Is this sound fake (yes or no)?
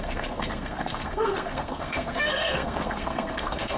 yes